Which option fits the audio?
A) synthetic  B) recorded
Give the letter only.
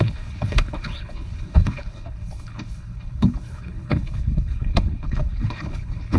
A